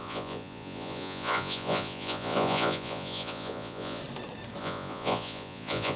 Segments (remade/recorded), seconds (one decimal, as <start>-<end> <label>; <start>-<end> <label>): 0.0-4.0 remade; 4.0-4.6 recorded; 4.6-6.0 remade